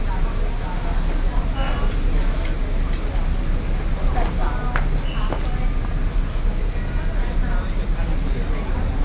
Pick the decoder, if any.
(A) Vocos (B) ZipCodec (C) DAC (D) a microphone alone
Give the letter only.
D